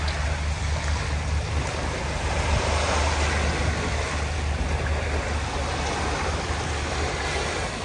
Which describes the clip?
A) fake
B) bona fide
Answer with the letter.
B